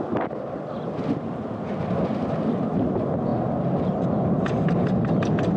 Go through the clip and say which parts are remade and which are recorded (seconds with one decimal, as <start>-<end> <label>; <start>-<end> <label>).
0.0-5.6 recorded